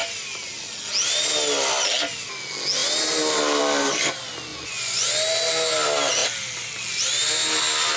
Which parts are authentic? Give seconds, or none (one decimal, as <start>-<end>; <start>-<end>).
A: 0.0-4.5; 5.1-8.0

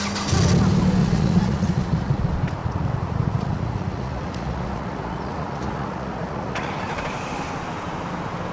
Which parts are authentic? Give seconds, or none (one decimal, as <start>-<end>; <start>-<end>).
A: 0.0-1.0; 2.2-2.6; 6.7-8.5

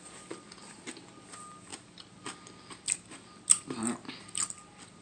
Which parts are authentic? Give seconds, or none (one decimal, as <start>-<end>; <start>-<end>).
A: 0.0-5.0

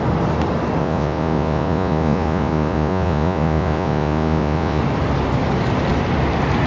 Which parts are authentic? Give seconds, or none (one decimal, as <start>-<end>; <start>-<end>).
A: 0.0-0.8; 4.8-6.7

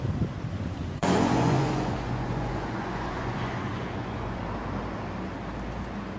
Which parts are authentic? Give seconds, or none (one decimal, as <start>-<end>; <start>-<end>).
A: 0.0-0.8; 4.4-6.2

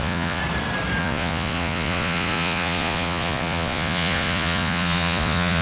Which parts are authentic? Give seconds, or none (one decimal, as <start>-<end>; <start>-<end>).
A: 0.4-1.0

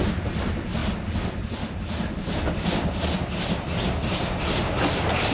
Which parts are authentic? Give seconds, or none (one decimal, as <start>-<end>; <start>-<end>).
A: 0.0-5.3

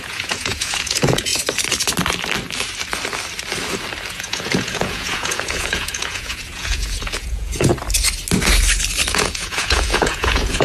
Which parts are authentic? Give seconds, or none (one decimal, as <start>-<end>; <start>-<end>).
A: 1.3-4.1; 7.7-9.1